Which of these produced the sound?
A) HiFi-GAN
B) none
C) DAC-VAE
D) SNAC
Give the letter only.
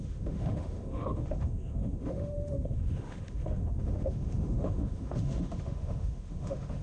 C